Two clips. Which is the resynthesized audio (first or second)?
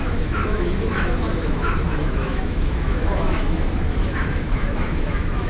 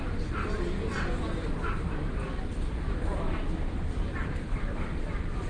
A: first